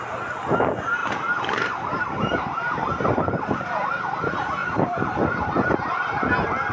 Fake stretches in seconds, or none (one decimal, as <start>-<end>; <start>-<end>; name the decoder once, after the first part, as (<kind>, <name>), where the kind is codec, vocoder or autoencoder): 1.0-3.9 (vocoder, BigVGAN v2); 4.6-6.3